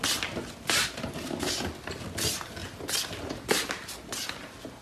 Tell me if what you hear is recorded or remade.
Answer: recorded